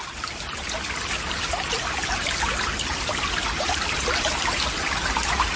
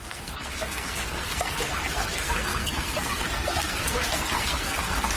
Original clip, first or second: first